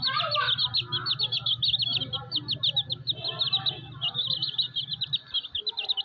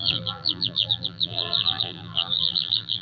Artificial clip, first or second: second